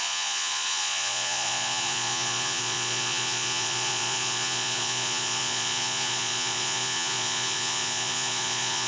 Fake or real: fake